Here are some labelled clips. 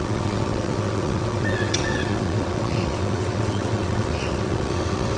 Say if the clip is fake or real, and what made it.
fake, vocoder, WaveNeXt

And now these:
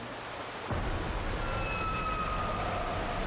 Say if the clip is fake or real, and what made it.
real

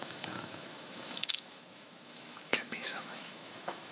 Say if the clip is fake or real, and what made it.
fake, autoencoder, DAC-VAE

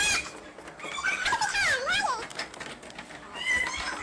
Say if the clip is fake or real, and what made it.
real